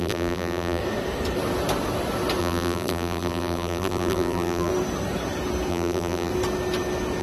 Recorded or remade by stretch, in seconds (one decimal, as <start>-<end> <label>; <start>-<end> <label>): 0.0-0.8 remade; 0.8-2.4 recorded; 2.4-4.7 remade; 4.7-5.7 recorded; 5.7-6.3 remade; 6.3-7.2 recorded